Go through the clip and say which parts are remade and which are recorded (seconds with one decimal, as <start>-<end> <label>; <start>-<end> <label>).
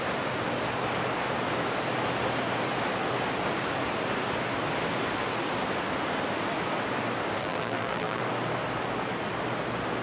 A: 0.0-7.4 recorded; 7.4-8.2 remade; 8.2-10.0 recorded